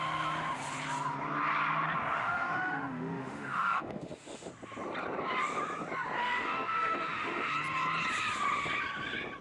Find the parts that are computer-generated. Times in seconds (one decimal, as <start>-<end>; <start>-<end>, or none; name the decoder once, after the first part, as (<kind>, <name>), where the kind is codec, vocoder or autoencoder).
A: 2.2-4.5 (autoencoder, DAC-VAE); 6.2-7.5